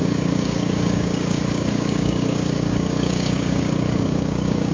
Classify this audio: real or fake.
fake